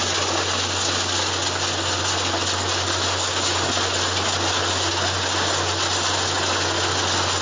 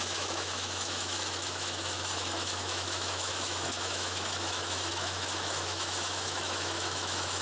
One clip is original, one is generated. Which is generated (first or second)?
second